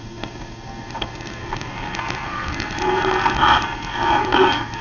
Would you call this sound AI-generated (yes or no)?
yes